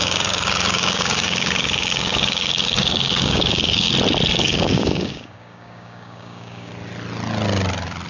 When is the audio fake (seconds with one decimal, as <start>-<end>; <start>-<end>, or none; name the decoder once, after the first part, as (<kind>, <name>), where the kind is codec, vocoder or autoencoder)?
0.0-3.9 (codec, DAC); 4.3-6.7